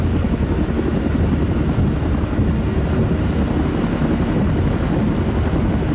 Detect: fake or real real